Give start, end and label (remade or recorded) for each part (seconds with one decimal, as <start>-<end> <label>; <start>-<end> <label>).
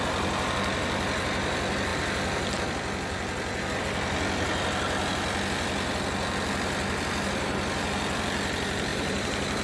0.0-8.9 recorded; 8.9-9.6 remade